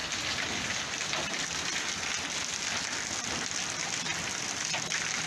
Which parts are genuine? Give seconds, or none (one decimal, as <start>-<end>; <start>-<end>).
0.0-5.3